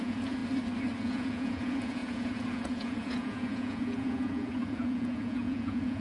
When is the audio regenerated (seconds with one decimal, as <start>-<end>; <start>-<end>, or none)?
0.0-0.4; 1.0-6.0

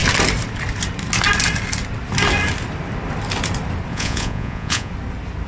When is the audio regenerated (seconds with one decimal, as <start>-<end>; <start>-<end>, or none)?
3.9-4.9

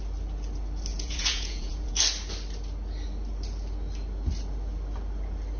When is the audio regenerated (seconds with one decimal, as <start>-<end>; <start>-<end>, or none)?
0.9-2.0

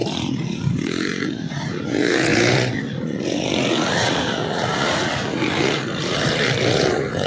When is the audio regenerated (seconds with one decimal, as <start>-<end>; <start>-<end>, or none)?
0.0-7.3

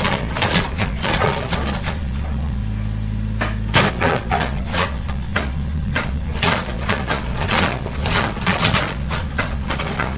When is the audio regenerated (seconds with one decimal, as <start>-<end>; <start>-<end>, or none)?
0.0-2.6; 3.9-10.2

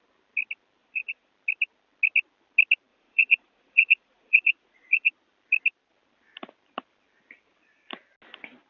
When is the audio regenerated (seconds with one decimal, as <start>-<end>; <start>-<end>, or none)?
0.8-1.3; 2.9-5.1

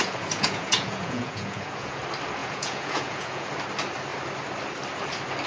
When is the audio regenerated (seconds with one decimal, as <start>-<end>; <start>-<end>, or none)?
0.0-2.0; 2.4-3.5

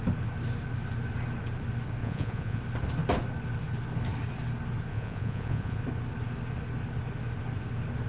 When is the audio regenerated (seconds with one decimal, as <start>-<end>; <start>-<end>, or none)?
2.0-2.6; 4.9-5.8